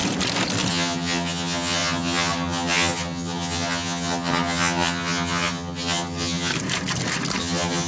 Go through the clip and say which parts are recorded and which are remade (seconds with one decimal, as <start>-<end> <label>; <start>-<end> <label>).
0.0-0.7 recorded; 0.7-6.5 remade; 6.5-7.4 recorded; 7.4-7.9 remade